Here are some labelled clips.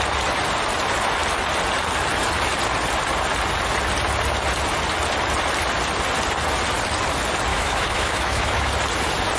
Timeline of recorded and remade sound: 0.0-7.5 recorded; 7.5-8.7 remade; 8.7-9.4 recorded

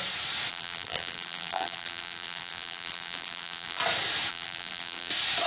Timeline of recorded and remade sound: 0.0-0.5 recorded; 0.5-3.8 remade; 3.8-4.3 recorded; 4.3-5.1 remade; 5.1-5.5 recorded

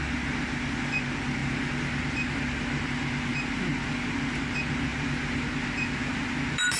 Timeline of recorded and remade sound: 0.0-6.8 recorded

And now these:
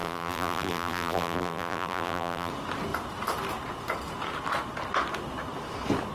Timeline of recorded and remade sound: 0.0-2.5 remade; 2.5-6.1 recorded

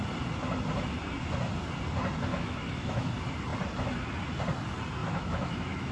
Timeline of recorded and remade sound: 0.0-2.3 recorded; 2.3-3.1 remade; 3.1-5.0 recorded; 5.0-5.9 remade

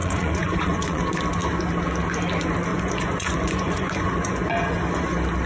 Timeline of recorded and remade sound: 0.0-1.0 remade; 1.0-2.7 recorded; 2.7-4.7 remade; 4.7-5.5 recorded